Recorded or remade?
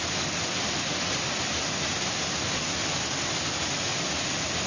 recorded